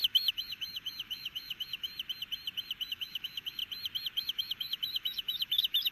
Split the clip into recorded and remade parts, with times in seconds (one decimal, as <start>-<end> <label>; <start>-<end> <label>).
0.0-1.9 remade; 1.9-2.9 recorded; 2.9-3.6 remade; 3.6-4.2 recorded; 4.2-5.9 remade